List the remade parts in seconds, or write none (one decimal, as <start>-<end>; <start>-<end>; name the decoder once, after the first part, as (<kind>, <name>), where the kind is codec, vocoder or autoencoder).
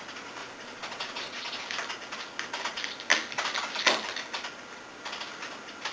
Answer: 0.4-1.6 (vocoder, Vocos)